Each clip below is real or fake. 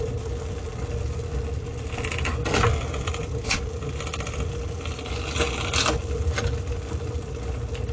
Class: real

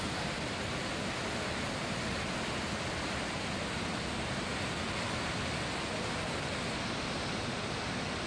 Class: real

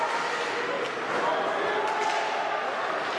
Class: real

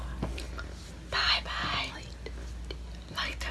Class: real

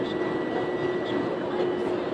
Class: real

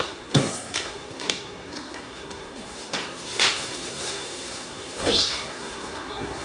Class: fake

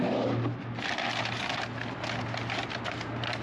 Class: real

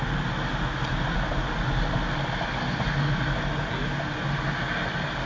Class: real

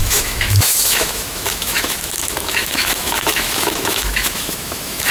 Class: fake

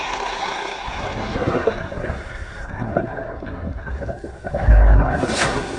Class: fake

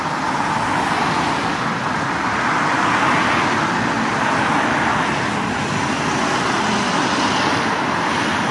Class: real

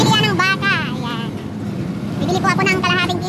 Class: real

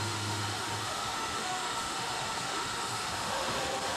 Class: fake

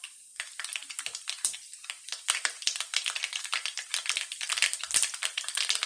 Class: fake